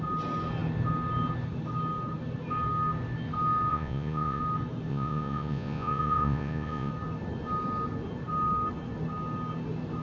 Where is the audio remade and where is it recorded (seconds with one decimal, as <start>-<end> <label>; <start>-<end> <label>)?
0.0-3.7 recorded; 3.7-4.4 remade; 4.4-4.9 recorded; 4.9-6.9 remade; 6.9-10.0 recorded